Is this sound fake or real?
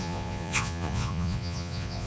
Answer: fake